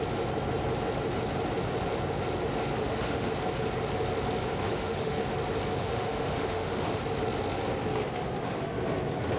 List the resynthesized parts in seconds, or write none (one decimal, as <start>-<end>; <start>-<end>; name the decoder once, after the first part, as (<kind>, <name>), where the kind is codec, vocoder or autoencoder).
2.8-3.3 (autoencoder, DAC-VAE); 4.6-5.2; 5.8-7.0